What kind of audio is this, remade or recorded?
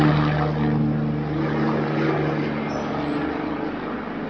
recorded